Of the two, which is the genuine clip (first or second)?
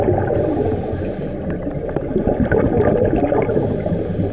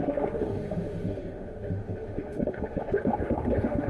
first